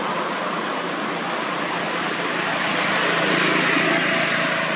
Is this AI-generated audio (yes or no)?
no